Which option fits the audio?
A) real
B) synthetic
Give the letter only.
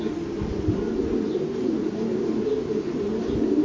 A